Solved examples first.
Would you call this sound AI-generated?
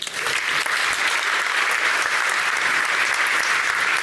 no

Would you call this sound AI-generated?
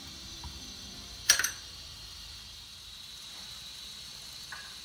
yes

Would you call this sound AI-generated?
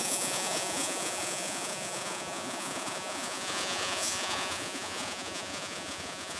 yes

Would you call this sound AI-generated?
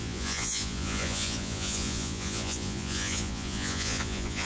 yes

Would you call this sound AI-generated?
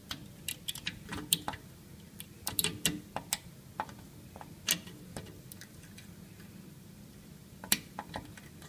no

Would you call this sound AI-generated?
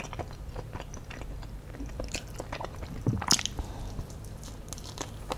no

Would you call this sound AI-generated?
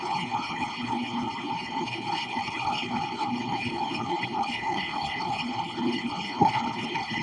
yes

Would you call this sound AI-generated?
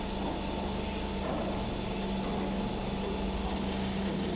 no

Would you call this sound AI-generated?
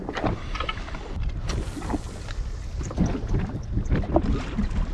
no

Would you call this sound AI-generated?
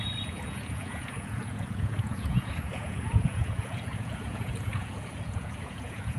yes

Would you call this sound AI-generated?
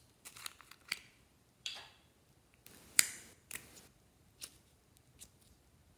yes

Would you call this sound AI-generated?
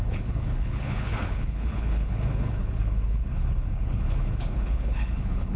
yes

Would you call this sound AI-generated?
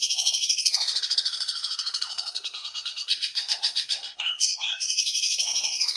yes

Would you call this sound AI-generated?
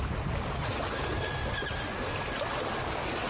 no